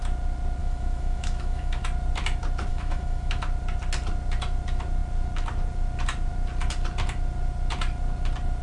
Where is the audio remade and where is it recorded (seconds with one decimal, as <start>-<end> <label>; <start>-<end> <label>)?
0.0-0.6 recorded; 0.6-1.8 remade; 1.8-2.7 recorded; 2.7-3.4 remade; 3.4-8.6 recorded